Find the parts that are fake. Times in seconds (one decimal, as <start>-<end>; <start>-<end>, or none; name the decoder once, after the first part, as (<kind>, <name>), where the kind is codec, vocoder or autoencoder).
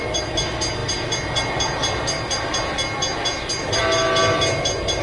none